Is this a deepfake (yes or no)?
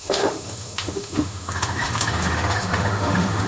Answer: yes